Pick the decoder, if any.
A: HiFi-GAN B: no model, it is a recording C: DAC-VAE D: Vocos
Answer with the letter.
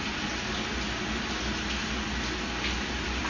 B